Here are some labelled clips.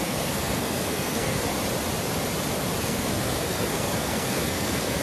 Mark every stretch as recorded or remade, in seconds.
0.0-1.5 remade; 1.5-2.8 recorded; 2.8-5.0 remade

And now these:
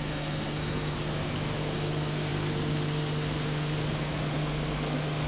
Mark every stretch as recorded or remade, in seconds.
0.0-5.3 remade

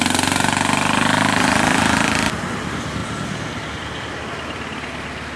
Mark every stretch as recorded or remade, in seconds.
0.0-5.4 recorded

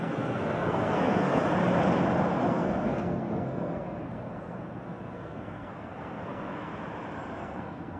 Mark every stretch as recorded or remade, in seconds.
0.0-1.4 remade; 1.4-2.5 recorded; 2.5-6.7 remade; 6.7-7.4 recorded; 7.4-8.0 remade

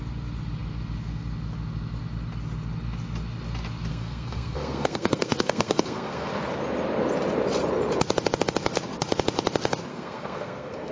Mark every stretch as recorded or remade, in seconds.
0.0-3.9 recorded; 3.9-6.3 remade; 6.3-9.9 recorded; 9.9-10.9 remade

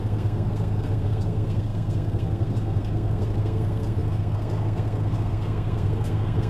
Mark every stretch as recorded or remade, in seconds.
0.0-6.5 remade

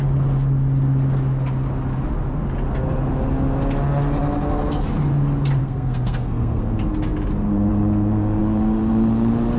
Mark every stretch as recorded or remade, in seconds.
0.0-5.6 recorded; 5.6-6.6 remade; 6.6-9.6 recorded

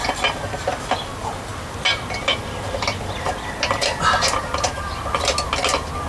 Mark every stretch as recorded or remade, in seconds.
0.0-6.1 recorded